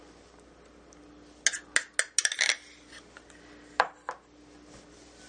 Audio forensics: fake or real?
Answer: real